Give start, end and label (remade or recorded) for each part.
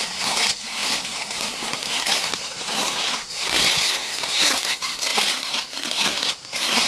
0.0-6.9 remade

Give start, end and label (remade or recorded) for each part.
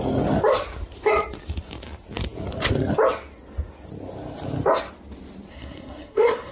0.0-5.5 recorded; 5.5-6.5 remade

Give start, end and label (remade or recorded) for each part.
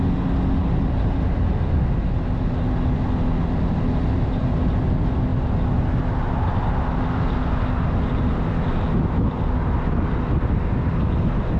0.0-11.6 recorded